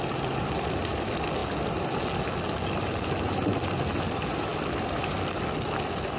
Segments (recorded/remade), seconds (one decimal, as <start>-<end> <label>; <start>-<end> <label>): 0.0-1.4 remade; 1.4-3.2 recorded; 3.2-6.2 remade